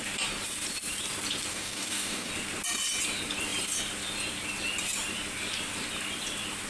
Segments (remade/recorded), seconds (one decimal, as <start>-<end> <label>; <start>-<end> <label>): 0.0-1.5 recorded; 1.5-2.3 remade; 2.3-6.7 recorded